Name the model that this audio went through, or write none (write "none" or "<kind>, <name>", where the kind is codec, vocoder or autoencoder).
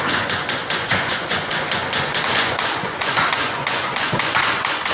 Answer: vocoder, Vocos